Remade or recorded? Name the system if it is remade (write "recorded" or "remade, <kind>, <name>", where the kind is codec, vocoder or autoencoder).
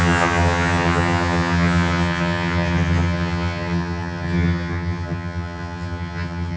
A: remade, vocoder, HiFi-GAN